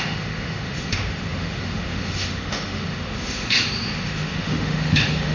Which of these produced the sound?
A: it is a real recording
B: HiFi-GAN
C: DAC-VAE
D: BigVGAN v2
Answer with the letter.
C